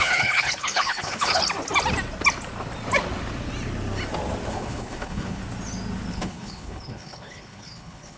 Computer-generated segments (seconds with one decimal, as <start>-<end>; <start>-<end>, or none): 0.0-1.4; 4.5-5.4; 6.1-8.2